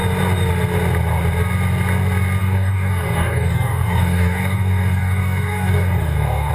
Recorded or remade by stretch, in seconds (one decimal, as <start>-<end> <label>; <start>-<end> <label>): 0.0-2.4 recorded; 2.4-6.5 remade